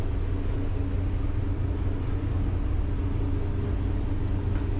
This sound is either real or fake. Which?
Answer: real